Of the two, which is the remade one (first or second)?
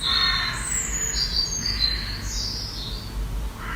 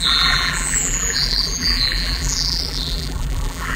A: second